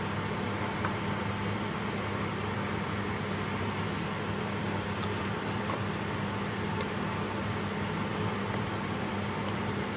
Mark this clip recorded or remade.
recorded